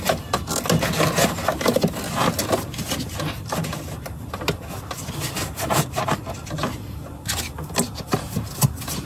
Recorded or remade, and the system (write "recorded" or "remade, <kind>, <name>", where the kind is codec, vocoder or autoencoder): recorded